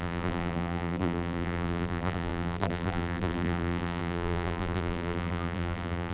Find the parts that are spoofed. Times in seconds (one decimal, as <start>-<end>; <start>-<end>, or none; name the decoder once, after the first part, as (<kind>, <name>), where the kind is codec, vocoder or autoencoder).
0.0-6.1 (vocoder, BigVGAN v2)